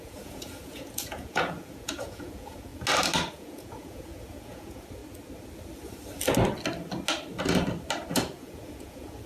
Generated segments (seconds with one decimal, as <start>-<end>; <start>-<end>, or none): 0.0-2.7; 3.3-5.0; 8.1-9.3